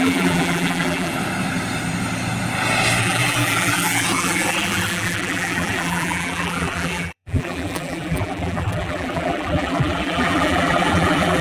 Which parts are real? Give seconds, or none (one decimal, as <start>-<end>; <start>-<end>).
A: 1.1-3.0